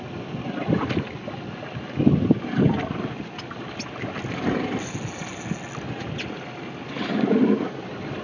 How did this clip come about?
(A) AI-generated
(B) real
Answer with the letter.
B